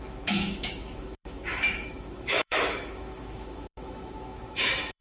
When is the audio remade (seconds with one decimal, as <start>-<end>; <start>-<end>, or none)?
0.0-5.0